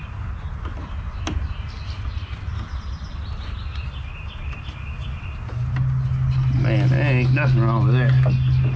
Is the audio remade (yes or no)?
no